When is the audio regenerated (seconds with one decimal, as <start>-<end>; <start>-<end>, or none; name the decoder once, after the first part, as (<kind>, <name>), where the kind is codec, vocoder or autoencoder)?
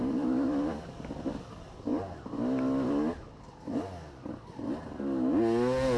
none